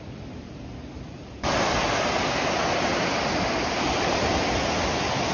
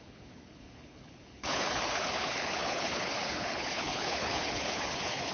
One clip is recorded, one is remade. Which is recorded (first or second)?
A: first